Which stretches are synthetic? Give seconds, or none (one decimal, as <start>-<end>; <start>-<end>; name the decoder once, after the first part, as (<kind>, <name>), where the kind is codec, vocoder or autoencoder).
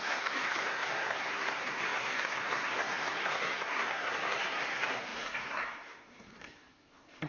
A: 0.0-7.3 (codec, SNAC)